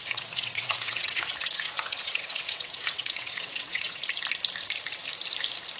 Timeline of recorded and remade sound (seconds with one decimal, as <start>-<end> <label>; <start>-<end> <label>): 0.0-4.0 remade; 4.0-5.8 recorded